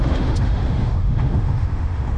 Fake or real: fake